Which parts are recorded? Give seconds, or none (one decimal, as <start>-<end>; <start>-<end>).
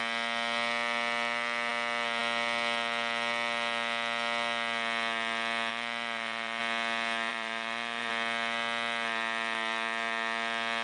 0.0-5.7; 6.6-7.3; 8.1-10.8